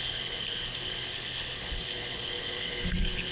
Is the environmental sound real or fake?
fake